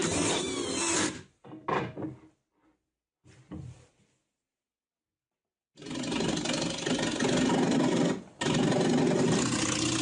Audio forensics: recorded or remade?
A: recorded